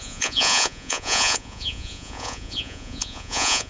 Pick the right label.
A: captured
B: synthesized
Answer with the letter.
B